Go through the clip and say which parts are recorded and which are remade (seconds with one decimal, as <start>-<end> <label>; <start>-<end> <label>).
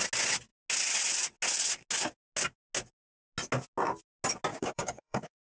0.0-4.5 recorded; 4.5-5.5 remade